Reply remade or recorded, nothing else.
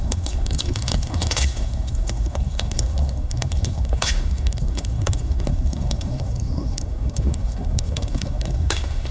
remade